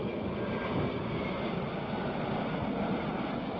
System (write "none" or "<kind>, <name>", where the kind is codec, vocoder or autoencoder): none